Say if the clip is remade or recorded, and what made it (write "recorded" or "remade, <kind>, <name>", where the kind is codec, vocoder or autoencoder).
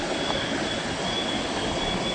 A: recorded